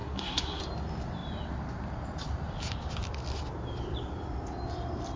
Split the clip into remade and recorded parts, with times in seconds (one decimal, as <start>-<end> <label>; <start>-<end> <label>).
0.0-0.6 remade; 0.6-5.2 recorded